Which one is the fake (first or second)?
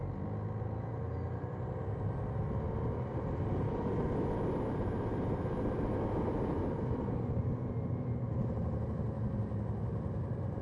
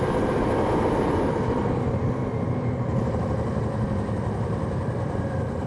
second